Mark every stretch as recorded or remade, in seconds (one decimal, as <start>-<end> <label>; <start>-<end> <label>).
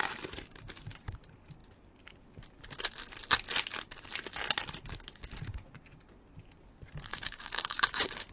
0.0-7.1 recorded; 7.1-8.3 remade